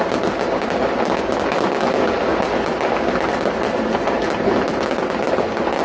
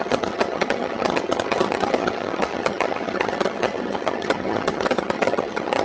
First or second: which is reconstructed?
second